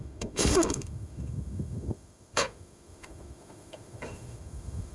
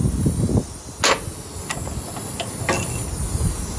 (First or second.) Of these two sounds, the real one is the second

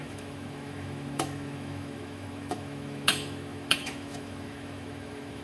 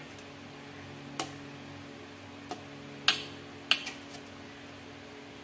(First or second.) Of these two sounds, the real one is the second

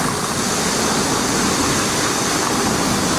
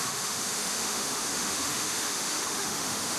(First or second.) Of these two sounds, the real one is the first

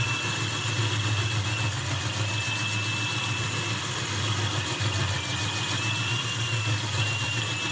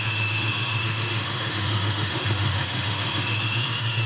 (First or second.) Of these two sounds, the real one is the first